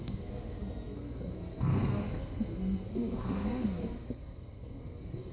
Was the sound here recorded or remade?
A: remade